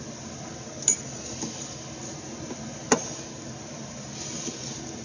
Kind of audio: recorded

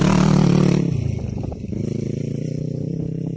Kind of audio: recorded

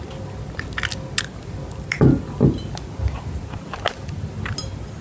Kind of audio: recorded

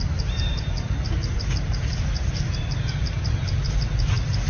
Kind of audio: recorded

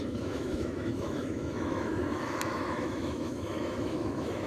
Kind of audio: remade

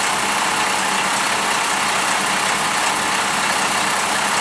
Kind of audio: recorded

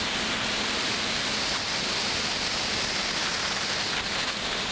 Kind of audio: recorded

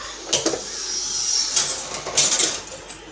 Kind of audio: recorded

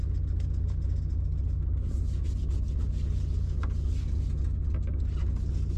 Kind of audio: recorded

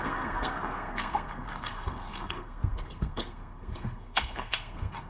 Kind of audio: remade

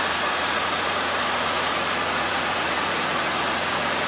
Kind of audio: remade